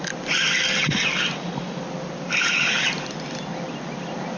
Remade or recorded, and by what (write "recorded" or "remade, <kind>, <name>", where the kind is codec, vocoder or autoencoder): recorded